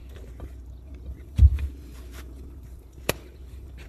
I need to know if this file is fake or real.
fake